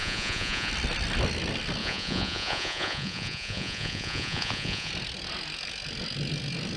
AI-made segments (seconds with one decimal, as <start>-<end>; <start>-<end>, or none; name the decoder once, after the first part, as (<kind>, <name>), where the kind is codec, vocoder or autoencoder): 0.0-0.7 (vocoder, Vocos); 1.8-4.9